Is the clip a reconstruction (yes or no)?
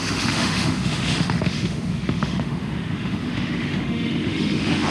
yes